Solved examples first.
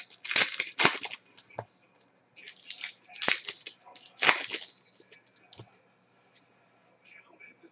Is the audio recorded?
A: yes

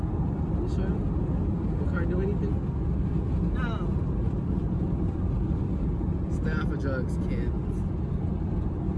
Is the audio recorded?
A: yes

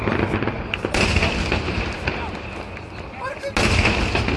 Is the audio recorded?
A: yes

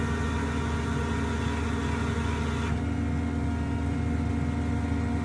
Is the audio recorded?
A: yes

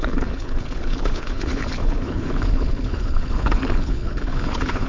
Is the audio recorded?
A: no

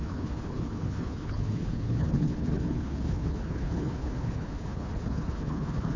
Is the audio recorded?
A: no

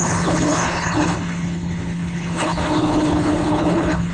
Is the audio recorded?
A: no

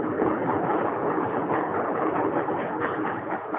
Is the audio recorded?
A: no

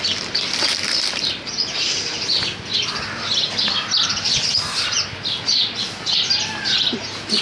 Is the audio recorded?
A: yes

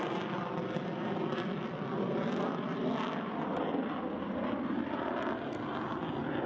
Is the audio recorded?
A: yes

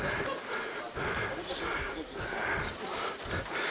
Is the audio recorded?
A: yes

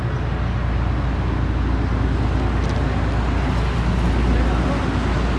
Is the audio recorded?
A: yes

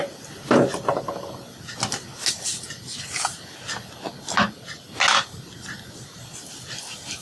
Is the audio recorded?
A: yes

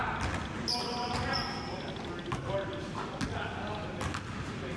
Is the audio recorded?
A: yes